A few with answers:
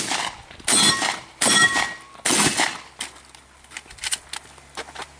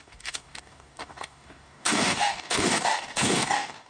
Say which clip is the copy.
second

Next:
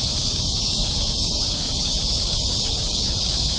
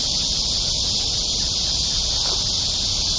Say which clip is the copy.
first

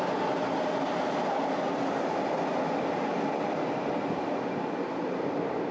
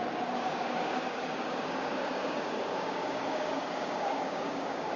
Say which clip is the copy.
second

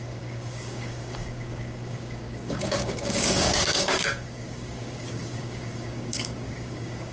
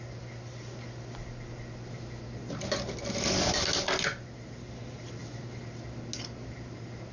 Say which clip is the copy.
first